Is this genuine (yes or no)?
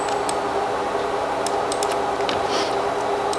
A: yes